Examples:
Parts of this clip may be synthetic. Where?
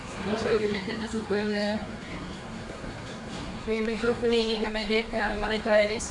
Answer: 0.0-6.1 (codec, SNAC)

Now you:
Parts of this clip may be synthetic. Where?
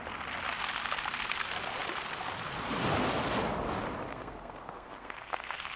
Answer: 4.1-5.8 (codec, SNAC)